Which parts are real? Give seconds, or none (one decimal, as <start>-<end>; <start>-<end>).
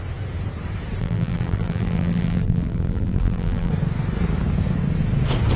0.0-1.0; 3.7-5.6